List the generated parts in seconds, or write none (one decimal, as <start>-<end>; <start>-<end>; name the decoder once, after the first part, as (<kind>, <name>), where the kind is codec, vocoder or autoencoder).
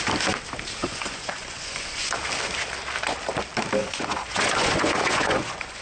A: 0.8-2.1 (vocoder, Vocos); 3.8-5.8